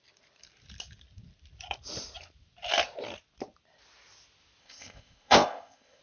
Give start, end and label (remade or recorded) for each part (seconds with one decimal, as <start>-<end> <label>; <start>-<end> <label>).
0.0-4.6 recorded; 4.6-6.0 remade